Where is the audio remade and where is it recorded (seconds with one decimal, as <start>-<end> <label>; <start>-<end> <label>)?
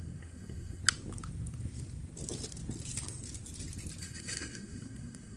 0.0-0.8 remade; 0.8-4.0 recorded; 4.0-5.4 remade